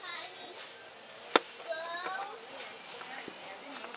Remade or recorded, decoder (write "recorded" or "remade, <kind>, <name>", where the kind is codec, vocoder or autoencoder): recorded